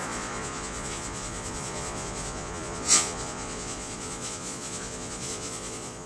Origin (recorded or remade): remade